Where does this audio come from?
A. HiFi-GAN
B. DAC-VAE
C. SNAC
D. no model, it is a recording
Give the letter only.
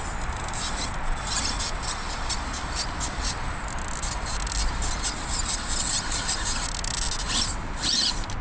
D